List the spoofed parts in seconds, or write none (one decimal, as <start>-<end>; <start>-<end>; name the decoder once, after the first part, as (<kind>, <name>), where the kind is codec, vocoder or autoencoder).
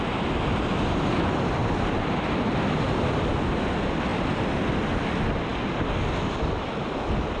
none